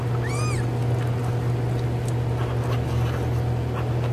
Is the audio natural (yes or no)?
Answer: yes